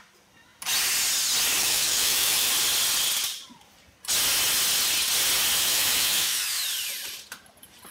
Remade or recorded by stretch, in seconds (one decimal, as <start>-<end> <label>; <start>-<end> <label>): 0.0-1.6 recorded; 1.6-2.5 remade; 2.5-5.6 recorded; 5.6-6.6 remade; 6.6-7.9 recorded